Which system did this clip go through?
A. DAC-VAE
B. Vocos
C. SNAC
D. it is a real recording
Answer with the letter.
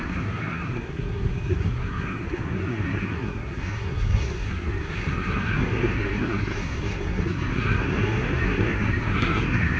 C